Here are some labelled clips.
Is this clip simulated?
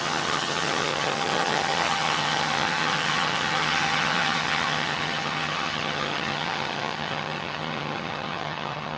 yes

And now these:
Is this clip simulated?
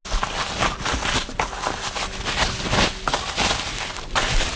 no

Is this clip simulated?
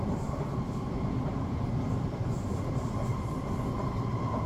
yes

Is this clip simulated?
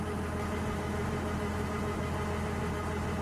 no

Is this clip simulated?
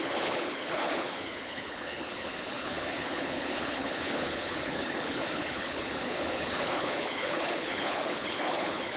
yes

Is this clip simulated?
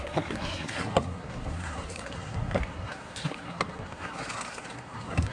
yes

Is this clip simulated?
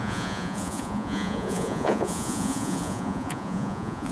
yes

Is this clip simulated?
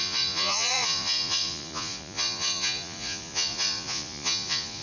yes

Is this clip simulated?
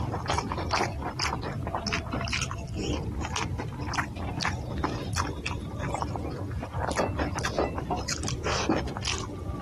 no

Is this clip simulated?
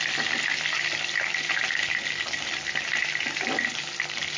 no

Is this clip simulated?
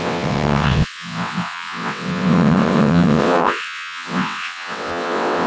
yes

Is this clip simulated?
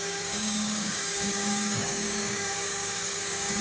yes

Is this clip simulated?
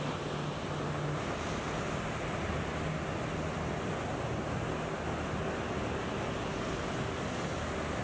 no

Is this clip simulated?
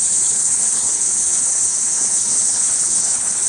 yes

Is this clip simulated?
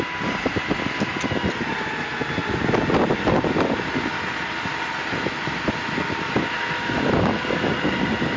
no